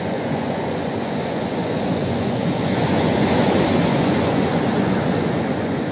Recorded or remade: remade